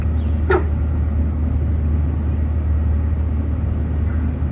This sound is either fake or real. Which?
real